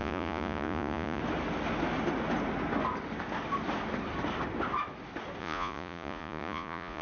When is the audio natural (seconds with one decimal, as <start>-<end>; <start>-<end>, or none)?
1.2-5.4